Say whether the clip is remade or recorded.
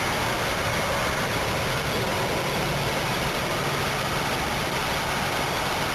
recorded